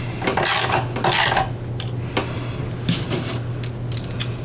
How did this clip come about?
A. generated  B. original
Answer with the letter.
B